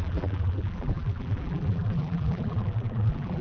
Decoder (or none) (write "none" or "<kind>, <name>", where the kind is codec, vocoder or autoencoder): vocoder, BigVGAN v2